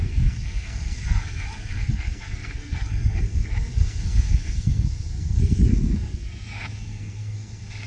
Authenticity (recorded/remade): remade